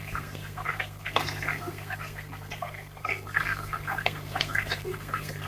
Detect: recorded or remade remade